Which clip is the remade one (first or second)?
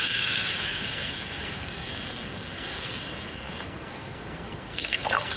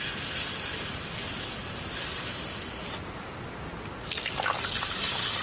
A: first